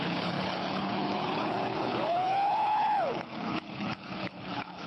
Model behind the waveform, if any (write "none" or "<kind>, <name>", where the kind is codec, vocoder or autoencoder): codec, HILCodec